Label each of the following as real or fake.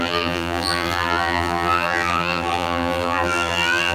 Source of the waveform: fake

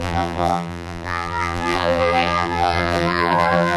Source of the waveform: fake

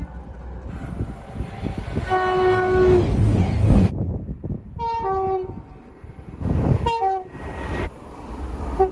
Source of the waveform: real